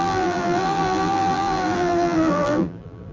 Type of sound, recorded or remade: remade